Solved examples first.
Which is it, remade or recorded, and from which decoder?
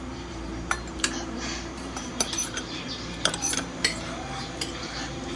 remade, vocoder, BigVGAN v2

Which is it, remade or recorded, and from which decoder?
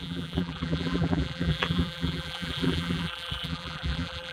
remade, vocoder, BigVGAN v2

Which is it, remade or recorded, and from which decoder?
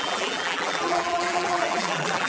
remade, vocoder, BigVGAN v2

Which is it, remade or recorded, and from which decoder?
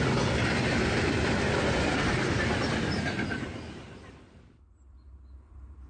recorded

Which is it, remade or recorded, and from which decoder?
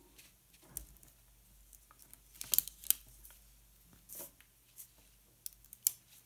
recorded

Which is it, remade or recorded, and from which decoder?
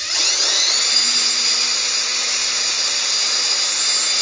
recorded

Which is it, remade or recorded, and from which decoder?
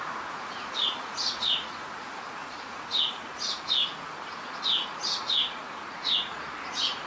remade, vocoder, Vocos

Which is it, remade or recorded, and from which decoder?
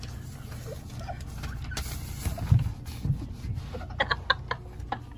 recorded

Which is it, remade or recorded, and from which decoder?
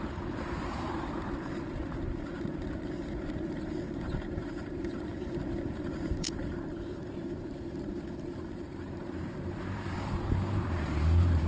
remade, vocoder, BigVGAN v2